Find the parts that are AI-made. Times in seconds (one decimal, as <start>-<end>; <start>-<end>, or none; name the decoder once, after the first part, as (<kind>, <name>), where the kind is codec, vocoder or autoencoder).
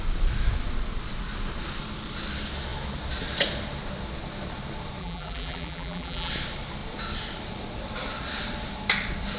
5.0-6.3 (vocoder, BigVGAN v2)